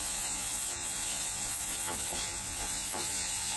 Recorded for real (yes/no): no